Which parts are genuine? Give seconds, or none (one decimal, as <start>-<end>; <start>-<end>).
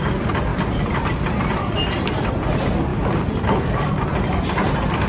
0.0-0.5; 1.5-5.1